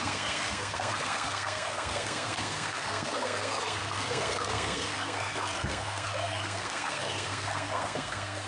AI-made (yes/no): yes